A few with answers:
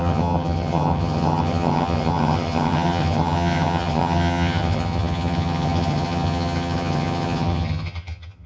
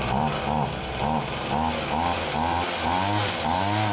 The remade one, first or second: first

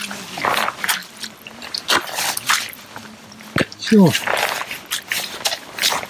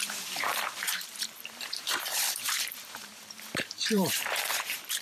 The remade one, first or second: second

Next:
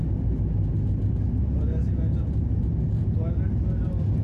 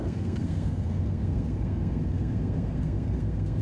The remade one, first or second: second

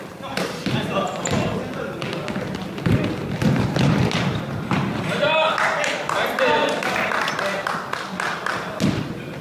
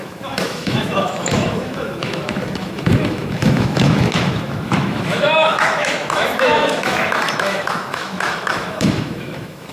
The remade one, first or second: second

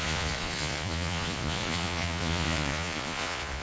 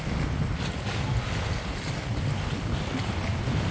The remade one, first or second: first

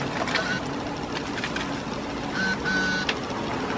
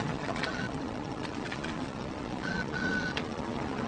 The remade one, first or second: second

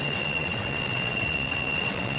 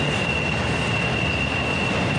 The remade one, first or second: first